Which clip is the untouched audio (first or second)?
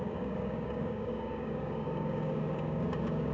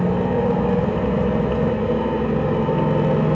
second